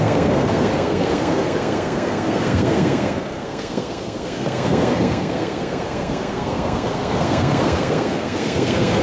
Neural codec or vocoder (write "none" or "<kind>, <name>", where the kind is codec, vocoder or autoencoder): codec, SNAC